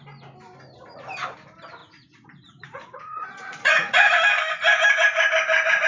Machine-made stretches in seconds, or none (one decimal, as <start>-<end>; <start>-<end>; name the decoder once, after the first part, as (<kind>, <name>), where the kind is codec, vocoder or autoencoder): 1.8-4.1 (vocoder, Vocos)